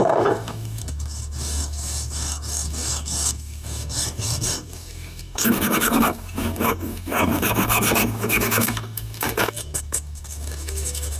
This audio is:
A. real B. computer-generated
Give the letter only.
B